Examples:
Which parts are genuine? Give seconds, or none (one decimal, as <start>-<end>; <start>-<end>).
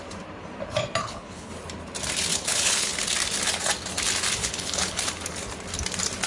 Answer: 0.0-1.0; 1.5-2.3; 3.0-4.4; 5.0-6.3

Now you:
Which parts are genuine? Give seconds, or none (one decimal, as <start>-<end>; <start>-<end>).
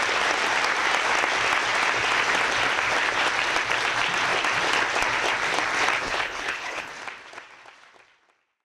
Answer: 0.0-6.0; 6.9-8.6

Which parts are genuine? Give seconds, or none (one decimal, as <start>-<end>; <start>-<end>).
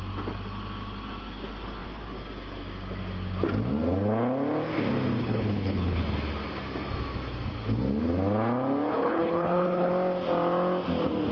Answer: 0.0-5.2; 6.0-8.9; 9.9-11.3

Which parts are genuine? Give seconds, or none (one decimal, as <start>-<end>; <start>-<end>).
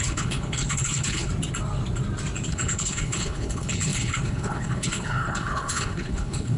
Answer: 1.3-2.5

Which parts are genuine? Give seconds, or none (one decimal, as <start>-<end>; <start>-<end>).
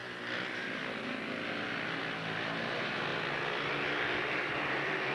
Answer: 0.0-5.1